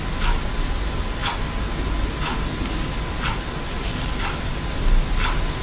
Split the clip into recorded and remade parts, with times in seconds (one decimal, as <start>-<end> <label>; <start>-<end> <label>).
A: 0.0-5.6 recorded